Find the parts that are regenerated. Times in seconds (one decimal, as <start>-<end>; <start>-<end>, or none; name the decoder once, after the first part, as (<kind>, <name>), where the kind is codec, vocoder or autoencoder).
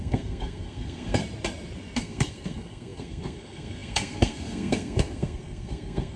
0.0-1.2 (codec, SNAC); 2.0-6.2